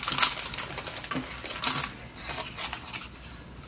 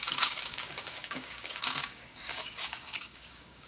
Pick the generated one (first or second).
second